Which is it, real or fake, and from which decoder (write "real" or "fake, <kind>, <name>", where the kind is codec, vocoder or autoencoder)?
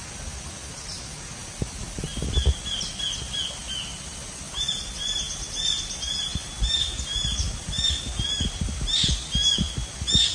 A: real